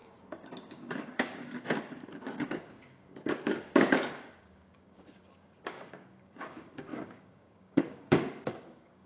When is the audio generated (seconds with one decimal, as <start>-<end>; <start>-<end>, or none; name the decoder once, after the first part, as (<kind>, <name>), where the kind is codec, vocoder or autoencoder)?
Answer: 0.0-9.1 (codec, DAC)